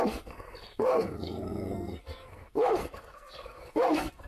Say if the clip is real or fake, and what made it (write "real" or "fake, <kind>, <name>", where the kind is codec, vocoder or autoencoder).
fake, codec, SNAC